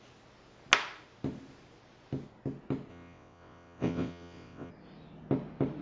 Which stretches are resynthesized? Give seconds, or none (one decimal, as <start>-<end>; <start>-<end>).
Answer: 2.9-4.7